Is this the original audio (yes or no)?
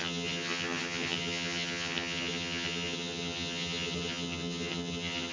no